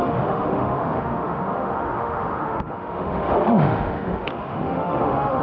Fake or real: fake